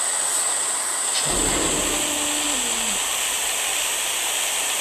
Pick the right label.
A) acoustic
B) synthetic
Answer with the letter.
A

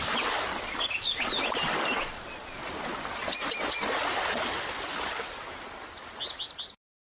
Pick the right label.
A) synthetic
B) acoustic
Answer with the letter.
B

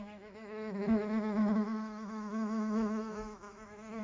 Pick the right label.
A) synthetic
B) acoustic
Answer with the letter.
A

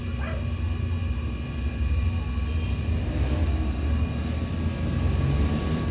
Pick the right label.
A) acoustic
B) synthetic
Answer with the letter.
A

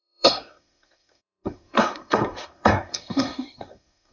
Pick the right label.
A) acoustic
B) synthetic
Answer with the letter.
B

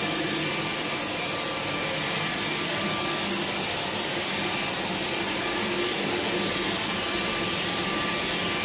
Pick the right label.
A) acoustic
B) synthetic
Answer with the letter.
A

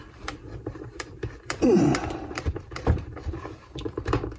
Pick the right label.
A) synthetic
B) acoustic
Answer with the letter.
A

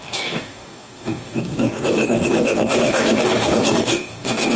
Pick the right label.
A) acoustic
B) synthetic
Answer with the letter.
B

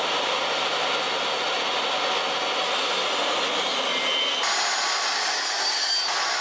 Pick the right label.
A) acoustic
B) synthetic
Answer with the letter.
A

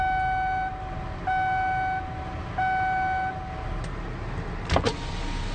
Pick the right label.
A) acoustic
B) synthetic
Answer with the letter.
A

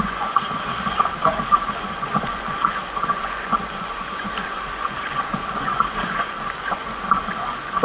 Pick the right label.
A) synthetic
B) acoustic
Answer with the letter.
A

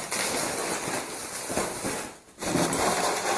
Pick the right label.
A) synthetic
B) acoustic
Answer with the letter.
B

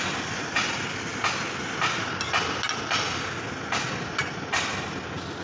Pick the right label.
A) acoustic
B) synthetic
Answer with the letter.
A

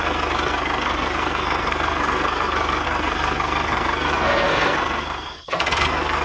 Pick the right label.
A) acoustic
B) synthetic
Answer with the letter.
B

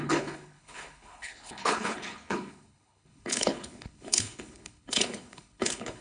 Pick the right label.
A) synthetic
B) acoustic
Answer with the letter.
A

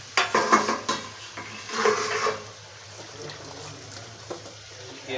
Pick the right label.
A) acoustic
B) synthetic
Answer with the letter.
A